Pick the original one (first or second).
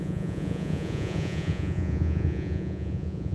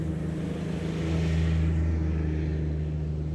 second